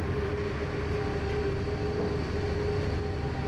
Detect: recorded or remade recorded